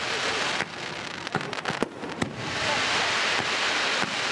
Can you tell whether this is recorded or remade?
recorded